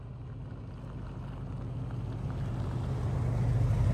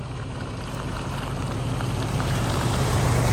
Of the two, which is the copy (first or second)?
second